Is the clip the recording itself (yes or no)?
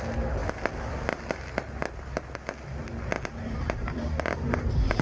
yes